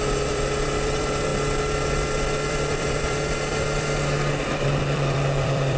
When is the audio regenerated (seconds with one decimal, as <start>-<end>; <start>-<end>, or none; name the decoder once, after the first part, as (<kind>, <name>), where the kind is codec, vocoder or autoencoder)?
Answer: 0.0-1.3 (vocoder, BigVGAN v2); 2.5-5.8

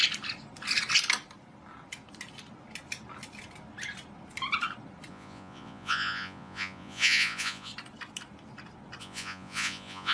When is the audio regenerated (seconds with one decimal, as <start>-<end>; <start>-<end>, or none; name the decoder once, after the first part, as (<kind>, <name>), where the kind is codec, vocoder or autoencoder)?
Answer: 5.1-7.7 (vocoder, Vocos); 9.0-10.1

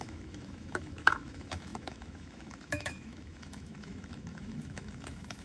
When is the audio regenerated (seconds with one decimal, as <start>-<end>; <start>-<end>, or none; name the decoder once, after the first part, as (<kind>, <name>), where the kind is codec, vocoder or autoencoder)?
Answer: 0.0-5.4 (autoencoder, DAC-VAE)